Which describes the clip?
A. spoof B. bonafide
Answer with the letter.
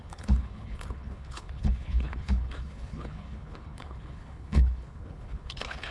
A